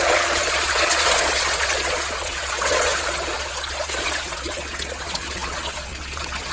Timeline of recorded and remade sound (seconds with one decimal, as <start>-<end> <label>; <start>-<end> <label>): 0.0-6.5 remade

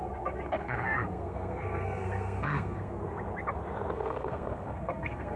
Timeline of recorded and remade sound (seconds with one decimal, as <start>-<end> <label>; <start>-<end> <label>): 0.0-3.0 remade; 3.0-3.9 recorded; 3.9-5.4 remade